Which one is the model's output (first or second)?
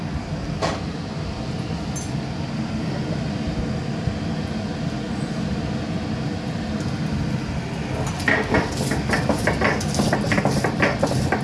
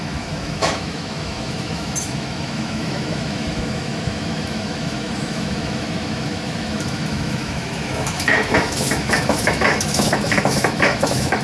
second